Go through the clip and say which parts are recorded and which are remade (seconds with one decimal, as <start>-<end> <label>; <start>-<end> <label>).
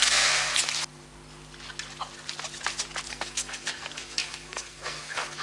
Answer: 0.0-0.5 remade; 0.5-3.1 recorded; 3.1-5.4 remade